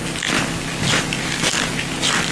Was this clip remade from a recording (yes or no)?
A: no